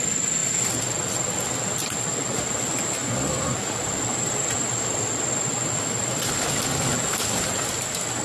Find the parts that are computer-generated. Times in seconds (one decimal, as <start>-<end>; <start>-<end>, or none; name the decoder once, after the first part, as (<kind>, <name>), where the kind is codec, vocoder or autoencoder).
none